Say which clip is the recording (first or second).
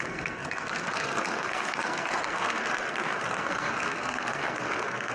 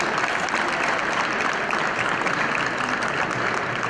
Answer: second